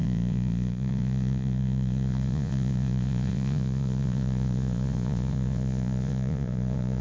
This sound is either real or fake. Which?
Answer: fake